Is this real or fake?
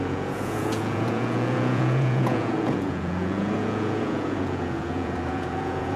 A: fake